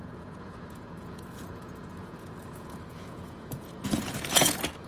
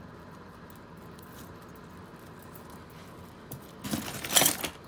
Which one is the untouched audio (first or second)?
second